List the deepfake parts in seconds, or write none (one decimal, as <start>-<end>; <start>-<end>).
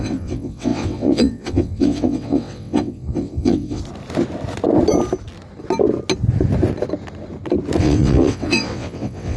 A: 0.0-3.8; 7.8-9.4